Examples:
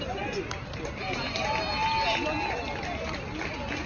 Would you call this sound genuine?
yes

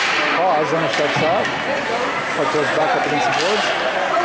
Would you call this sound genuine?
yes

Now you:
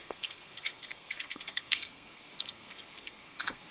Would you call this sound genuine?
no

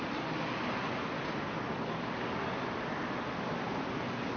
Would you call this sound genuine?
yes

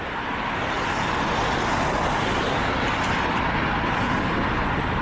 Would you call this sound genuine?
yes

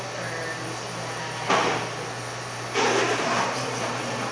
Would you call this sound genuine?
yes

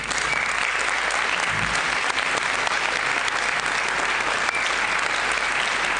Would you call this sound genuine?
yes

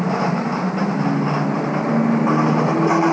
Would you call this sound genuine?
yes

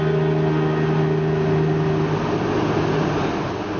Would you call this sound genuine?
yes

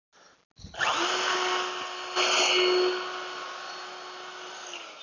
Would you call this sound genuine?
yes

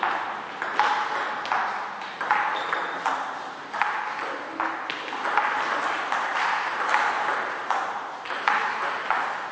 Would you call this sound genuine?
yes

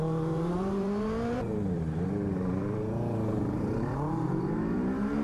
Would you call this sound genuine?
no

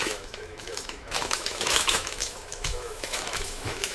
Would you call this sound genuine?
no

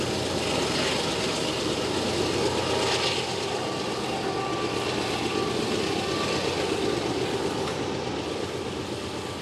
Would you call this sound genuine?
yes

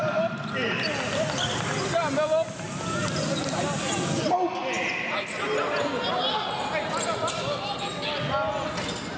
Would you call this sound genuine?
yes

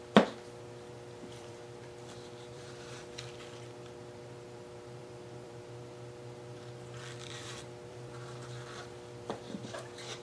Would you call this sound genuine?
no